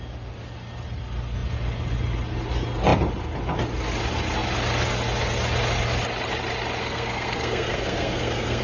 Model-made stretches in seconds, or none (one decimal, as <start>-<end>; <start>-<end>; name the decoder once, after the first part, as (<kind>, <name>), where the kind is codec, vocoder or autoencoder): 6.8-8.6 (codec, SNAC)